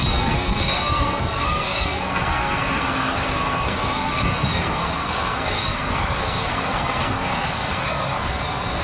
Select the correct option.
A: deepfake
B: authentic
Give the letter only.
A